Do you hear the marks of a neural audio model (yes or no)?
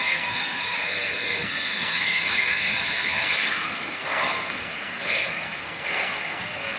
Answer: yes